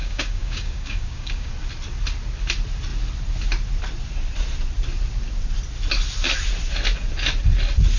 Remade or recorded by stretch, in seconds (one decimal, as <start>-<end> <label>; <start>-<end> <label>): 0.0-1.5 remade; 1.5-8.0 recorded